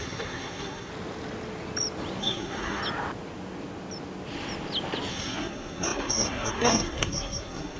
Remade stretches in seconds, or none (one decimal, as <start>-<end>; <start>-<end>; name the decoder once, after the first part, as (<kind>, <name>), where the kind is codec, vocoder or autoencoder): 0.0-0.9 (codec, SNAC); 2.2-2.8; 5.1-7.8